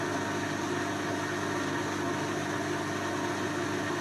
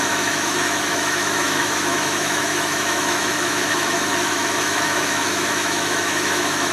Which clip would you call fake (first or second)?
second